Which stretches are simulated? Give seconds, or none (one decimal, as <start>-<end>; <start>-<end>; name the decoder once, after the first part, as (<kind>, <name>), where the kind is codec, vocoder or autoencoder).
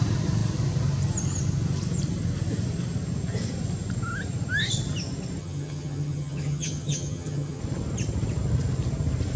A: 5.4-7.6 (vocoder, HiFi-GAN)